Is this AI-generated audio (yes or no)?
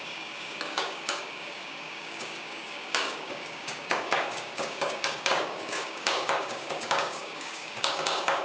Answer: yes